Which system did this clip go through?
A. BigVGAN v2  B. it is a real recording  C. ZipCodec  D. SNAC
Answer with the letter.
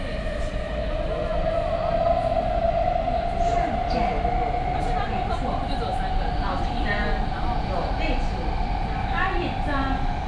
B